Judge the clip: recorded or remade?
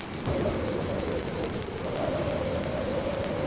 recorded